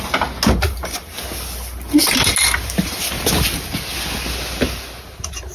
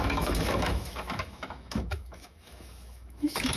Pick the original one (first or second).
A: first